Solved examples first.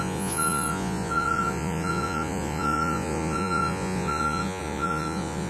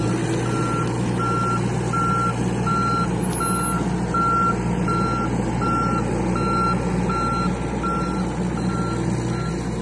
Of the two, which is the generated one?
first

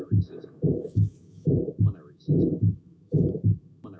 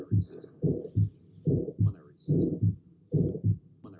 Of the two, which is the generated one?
first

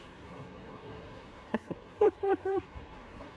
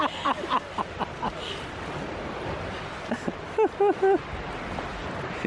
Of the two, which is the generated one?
first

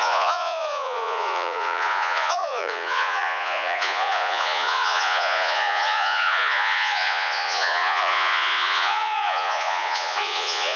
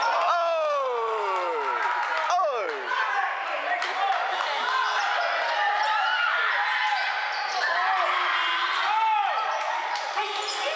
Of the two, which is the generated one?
first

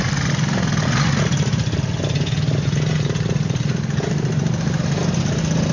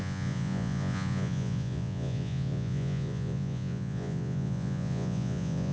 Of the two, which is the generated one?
second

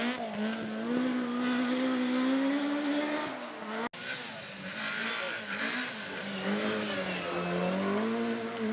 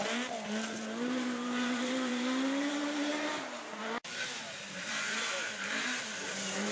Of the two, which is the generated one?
second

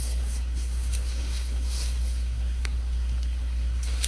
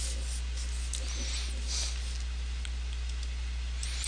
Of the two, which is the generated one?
first